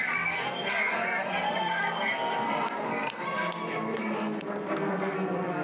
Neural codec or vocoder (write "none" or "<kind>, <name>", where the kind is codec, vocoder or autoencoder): codec, SNAC